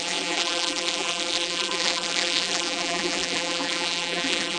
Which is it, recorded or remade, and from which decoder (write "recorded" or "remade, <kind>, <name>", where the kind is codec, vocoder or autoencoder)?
remade, vocoder, BigVGAN v2